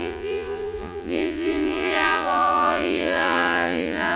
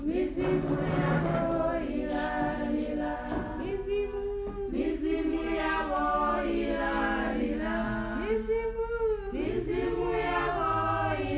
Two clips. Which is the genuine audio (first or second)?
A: second